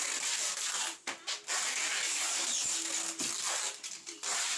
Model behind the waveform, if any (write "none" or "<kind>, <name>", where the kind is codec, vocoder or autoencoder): none